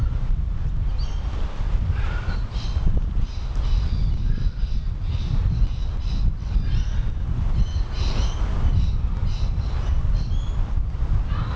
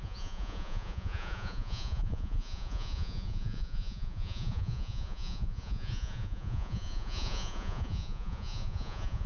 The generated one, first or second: second